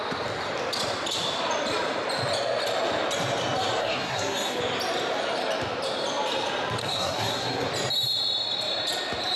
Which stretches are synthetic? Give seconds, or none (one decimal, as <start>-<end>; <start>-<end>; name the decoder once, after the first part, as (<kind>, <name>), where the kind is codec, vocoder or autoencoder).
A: 3.8-4.6 (codec, SNAC); 6.8-7.7